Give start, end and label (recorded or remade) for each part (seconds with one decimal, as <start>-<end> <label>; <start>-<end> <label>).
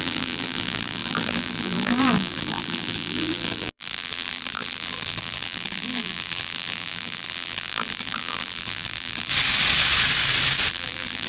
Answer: 0.0-9.3 remade; 9.3-10.7 recorded; 10.7-11.3 remade